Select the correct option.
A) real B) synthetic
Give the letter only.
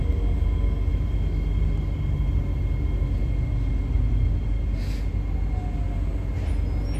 A